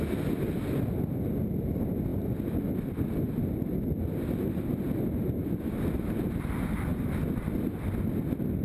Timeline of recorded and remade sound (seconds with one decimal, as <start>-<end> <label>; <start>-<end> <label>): 0.0-8.6 recorded